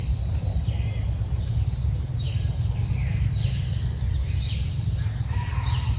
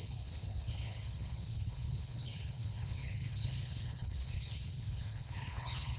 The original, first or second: first